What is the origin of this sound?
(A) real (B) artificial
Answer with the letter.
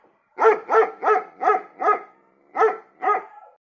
A